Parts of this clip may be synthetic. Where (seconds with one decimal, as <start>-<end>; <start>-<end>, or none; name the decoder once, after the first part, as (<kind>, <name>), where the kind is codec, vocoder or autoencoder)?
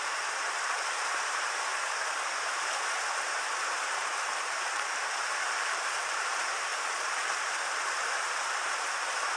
0.0-1.7 (vocoder, BigVGAN v2); 2.3-6.7; 7.5-9.4